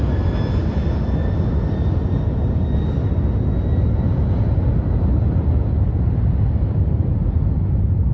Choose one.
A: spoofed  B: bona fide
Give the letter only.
B